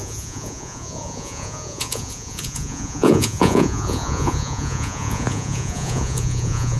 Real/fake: fake